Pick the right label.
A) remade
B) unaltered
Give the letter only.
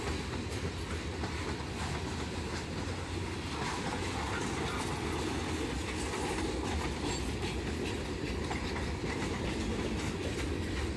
B